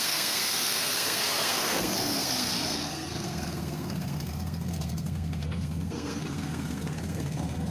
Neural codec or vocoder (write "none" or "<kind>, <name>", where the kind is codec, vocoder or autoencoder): codec, SNAC